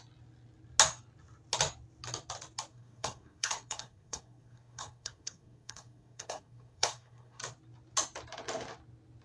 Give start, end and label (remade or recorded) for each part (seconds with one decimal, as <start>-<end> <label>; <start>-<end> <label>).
0.0-2.7 recorded; 2.7-7.4 remade; 7.4-9.2 recorded